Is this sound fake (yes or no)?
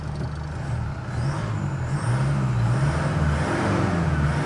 no